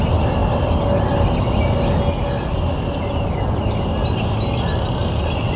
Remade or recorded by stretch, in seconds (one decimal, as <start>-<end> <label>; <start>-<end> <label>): 0.0-5.6 recorded